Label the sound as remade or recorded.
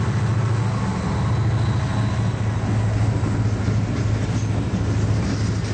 recorded